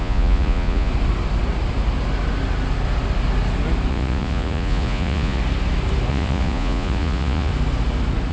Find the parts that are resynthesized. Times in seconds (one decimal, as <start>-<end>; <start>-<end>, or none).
0.0-0.9; 3.9-5.4; 6.1-7.5

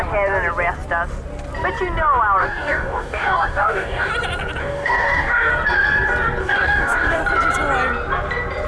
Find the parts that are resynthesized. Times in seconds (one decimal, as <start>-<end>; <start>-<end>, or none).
2.4-4.1; 4.6-5.5; 6.4-7.2